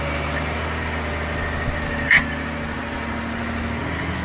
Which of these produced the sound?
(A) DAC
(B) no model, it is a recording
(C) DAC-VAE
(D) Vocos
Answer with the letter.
B